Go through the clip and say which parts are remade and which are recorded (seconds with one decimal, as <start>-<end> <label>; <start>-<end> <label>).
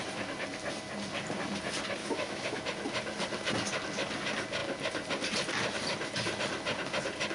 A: 0.0-2.0 recorded; 2.0-2.6 remade; 2.6-7.3 recorded